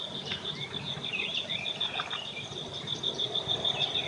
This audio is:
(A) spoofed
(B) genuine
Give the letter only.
A